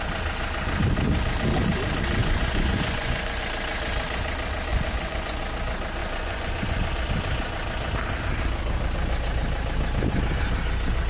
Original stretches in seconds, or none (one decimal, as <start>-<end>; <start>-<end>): 0.0-2.2; 3.4-4.7; 5.4-6.0; 6.9-11.1

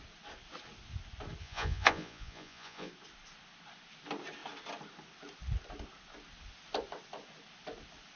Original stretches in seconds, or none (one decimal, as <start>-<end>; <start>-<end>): 0.0-1.4; 2.9-8.2

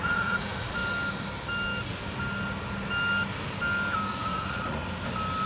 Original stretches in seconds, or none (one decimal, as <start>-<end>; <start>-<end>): 0.8-4.1; 4.8-5.5

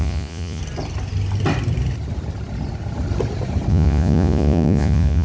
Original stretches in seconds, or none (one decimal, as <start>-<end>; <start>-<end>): 0.6-3.7